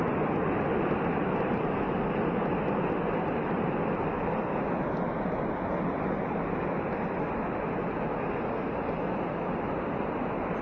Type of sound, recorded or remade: recorded